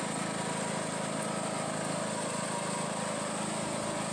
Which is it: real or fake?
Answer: real